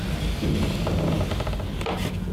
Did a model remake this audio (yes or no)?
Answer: no